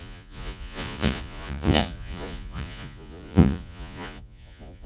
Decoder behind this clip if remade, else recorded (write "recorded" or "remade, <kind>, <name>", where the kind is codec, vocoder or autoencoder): remade, vocoder, Vocos